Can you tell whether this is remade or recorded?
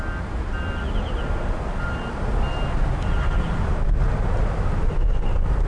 recorded